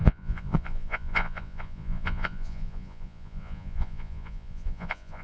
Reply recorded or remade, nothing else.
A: remade